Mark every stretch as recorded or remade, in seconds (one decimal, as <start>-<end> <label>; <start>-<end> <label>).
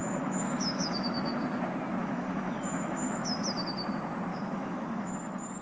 0.0-1.4 remade; 1.4-2.0 recorded; 2.0-3.3 remade; 3.3-4.3 recorded; 4.3-5.1 remade; 5.1-5.6 recorded